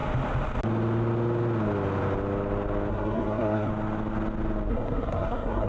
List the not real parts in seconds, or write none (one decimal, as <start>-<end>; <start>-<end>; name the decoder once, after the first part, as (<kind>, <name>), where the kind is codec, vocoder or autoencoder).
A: 2.9-3.7 (codec, SNAC); 4.7-5.7